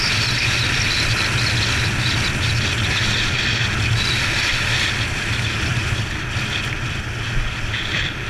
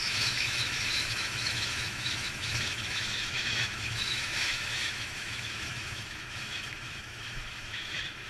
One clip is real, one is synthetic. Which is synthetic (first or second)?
second